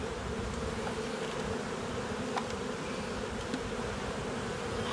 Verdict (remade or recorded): recorded